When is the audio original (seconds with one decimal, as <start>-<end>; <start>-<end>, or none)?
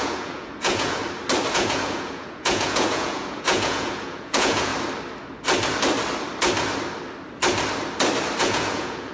1.0-1.5; 4.7-8.4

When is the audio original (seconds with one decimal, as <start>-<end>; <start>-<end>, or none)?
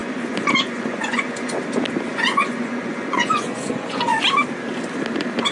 1.6-2.1; 4.2-5.5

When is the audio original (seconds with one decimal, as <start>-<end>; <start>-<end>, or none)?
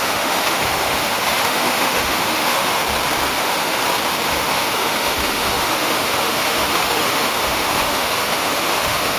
2.8-3.4; 3.8-4.3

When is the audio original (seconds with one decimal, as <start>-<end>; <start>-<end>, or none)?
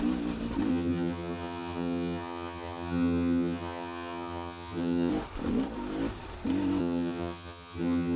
0.0-0.7; 5.1-6.8